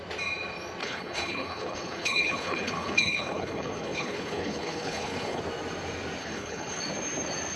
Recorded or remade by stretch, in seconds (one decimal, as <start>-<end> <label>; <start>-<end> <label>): 0.0-0.8 recorded; 0.8-5.4 remade; 5.4-6.2 recorded; 6.2-6.8 remade; 6.8-7.6 recorded